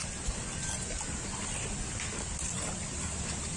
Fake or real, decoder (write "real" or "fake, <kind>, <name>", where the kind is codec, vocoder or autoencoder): real